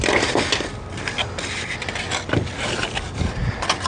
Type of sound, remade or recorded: recorded